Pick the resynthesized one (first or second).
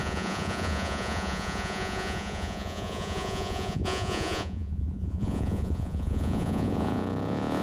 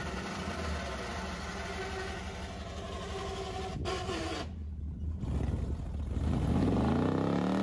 first